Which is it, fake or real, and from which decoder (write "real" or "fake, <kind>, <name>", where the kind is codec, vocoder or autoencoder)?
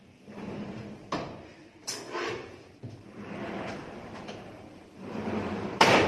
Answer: fake, vocoder, BigVGAN v2